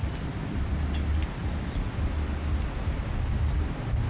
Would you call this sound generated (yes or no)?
no